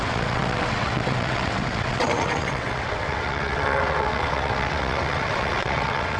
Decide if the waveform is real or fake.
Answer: fake